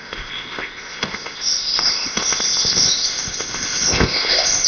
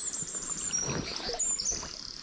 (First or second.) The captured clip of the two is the second